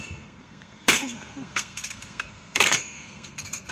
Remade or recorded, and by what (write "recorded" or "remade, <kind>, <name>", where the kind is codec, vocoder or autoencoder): remade, codec, SNAC